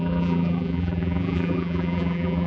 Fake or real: fake